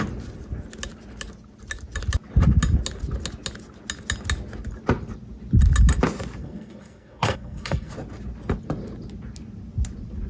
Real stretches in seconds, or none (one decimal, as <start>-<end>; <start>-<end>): 0.0-6.4; 7.9-10.3